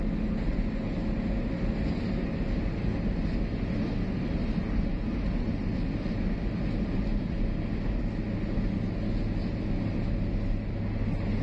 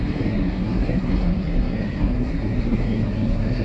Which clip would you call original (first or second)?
first